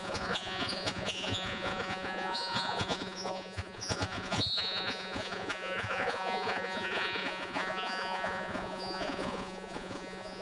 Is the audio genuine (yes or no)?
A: no